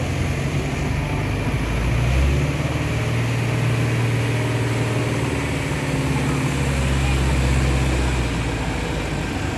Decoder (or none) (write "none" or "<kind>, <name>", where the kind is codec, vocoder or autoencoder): none